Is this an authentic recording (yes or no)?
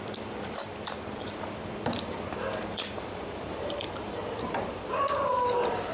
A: no